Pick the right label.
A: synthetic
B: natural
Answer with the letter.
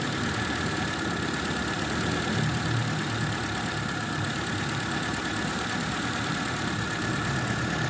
A